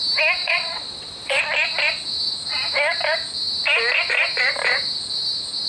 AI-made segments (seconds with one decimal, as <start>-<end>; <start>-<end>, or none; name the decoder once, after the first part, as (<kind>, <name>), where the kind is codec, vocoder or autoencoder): 0.4-1.4 (vocoder, WaveNeXt)